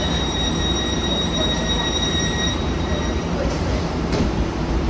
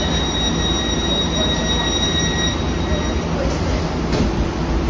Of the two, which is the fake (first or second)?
first